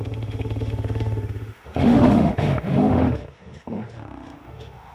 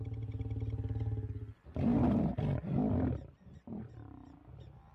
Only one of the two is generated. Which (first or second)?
first